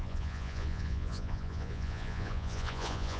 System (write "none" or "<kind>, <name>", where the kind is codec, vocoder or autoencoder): vocoder, Vocos